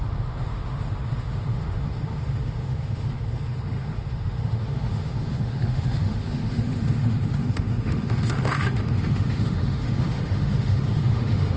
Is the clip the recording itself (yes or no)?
no